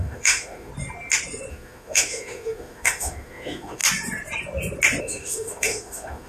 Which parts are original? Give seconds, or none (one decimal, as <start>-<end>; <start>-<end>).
0.7-1.5; 3.8-5.0